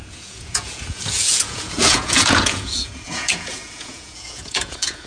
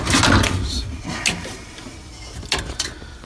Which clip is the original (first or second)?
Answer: second